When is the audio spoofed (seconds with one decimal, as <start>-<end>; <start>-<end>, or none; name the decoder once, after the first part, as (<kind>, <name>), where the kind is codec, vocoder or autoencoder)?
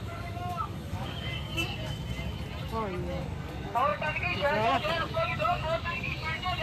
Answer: 0.0-1.5 (codec, DAC); 3.2-6.6